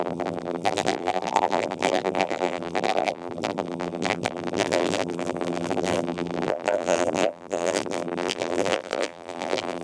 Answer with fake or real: fake